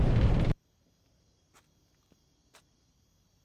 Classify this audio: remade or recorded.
remade